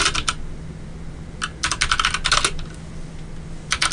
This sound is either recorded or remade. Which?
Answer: recorded